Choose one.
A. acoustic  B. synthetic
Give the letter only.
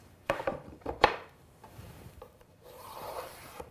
B